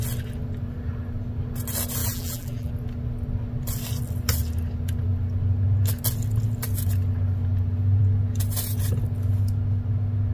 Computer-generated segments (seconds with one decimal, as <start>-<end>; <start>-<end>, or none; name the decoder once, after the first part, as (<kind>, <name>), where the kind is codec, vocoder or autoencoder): 2.0-2.7 (vocoder, BigVGAN v2)

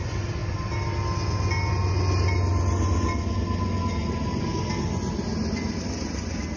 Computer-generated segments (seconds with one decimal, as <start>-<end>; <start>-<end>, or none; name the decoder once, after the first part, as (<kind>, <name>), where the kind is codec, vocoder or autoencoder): none

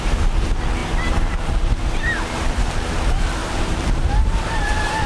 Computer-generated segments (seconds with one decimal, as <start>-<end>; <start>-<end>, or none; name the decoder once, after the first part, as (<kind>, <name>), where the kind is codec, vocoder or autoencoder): 0.8-1.8 (vocoder, BigVGAN v2); 3.4-5.1